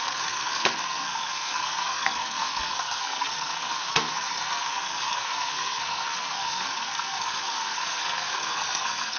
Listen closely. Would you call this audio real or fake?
fake